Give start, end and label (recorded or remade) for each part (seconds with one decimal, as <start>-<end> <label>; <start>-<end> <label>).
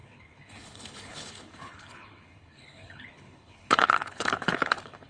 0.0-5.1 remade